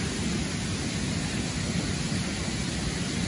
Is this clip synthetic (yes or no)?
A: no